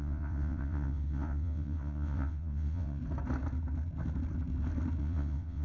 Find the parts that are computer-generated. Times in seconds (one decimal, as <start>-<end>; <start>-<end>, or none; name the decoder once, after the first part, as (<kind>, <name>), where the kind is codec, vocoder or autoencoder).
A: 0.0-3.0 (vocoder, WaveNeXt); 5.0-5.6